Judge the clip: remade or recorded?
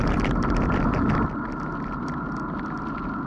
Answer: recorded